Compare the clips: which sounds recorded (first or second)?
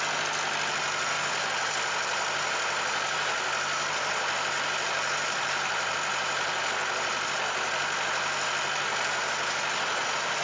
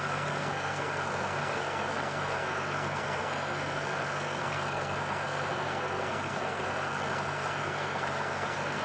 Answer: first